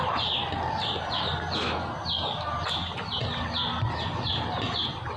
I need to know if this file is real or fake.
real